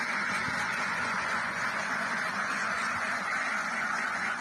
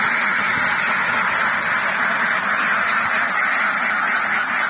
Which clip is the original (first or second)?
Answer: second